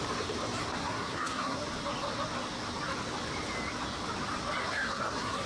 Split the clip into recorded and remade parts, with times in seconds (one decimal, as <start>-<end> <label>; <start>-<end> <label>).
0.0-0.8 recorded; 0.8-1.6 remade; 1.6-4.6 recorded; 4.6-5.5 remade